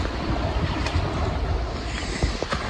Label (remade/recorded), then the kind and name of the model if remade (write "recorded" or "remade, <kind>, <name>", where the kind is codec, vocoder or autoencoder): recorded